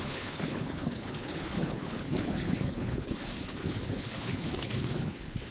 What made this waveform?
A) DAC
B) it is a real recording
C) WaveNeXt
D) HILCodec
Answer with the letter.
D